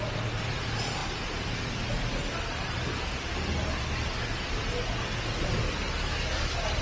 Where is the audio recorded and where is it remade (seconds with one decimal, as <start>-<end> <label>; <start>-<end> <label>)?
0.0-1.0 recorded; 1.0-3.8 remade; 3.8-6.8 recorded